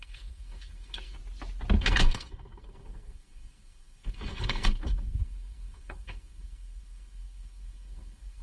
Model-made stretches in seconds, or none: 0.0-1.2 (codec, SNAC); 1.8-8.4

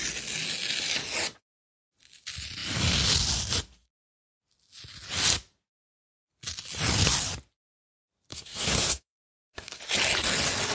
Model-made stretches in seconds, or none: 8.3-9.8 (codec, SNAC)

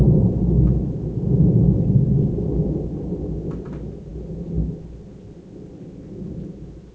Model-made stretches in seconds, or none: none

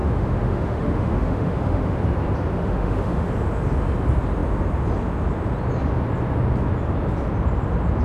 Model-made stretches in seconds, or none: 0.0-2.0 (autoencoder, DAC-VAE); 2.6-3.3

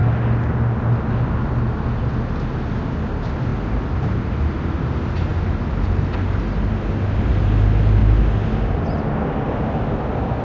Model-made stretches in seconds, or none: none

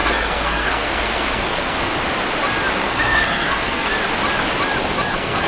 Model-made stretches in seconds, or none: 0.0-1.9 (codec, SNAC); 2.8-3.9; 5.1-5.5

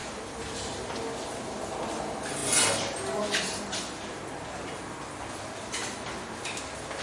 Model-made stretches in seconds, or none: 0.0-0.9 (vocoder, BigVGAN v2)